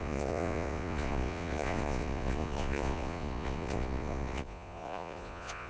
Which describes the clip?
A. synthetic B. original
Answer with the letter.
A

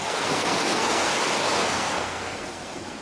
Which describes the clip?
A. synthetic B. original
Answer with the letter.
A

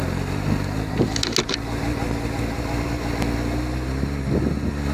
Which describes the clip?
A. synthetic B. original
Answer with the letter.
B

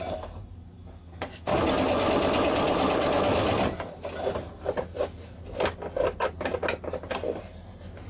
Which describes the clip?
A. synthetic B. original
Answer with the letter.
B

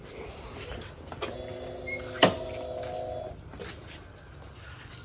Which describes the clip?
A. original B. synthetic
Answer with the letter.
A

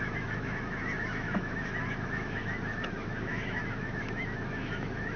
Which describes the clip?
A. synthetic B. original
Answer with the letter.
A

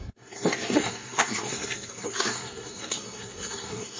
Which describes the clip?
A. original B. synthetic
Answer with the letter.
B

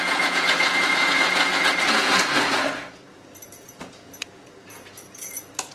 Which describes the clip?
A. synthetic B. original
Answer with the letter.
A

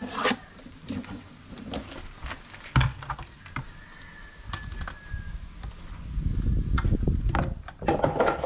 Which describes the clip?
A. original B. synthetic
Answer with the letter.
A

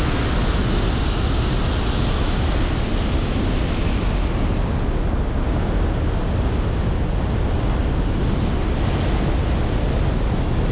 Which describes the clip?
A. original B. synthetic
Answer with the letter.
A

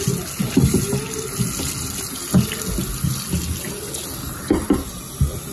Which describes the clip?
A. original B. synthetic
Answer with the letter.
A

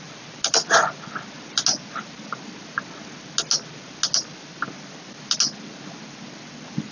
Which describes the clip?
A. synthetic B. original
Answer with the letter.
B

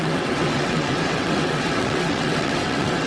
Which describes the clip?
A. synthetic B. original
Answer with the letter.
A